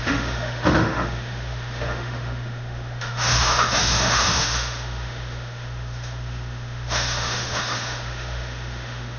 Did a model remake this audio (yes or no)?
yes